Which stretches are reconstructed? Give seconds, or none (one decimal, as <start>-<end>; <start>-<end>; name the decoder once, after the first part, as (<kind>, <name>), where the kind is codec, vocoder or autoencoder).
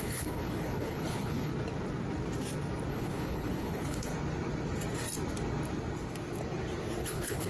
0.0-1.5 (codec, HILCodec); 2.9-4.1; 7.0-7.5